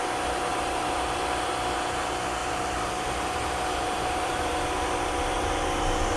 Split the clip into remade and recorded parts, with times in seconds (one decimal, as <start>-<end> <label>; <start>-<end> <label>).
0.0-0.5 recorded; 0.5-1.1 remade; 1.1-2.4 recorded; 2.4-6.2 remade